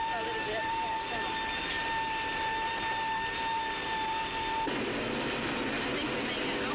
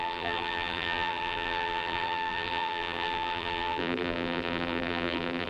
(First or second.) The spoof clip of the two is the second